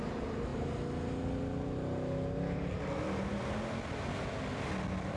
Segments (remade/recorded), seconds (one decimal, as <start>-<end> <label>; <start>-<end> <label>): 0.0-5.2 recorded